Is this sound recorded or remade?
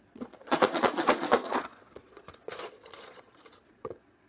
remade